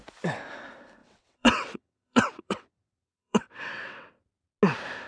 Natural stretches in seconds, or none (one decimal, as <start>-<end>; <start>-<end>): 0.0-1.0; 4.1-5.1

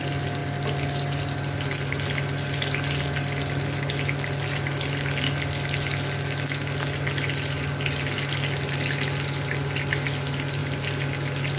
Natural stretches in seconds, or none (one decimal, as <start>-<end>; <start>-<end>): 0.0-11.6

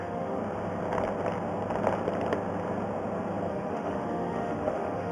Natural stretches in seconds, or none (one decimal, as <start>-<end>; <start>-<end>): 0.4-3.5

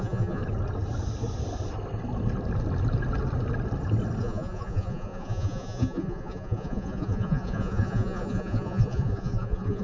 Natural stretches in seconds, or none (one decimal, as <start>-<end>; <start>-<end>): 0.4-4.2